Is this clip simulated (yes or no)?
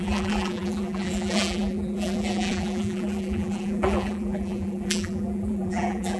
yes